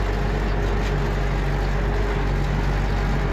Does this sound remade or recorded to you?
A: recorded